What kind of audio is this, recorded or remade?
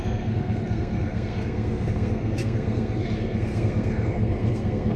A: remade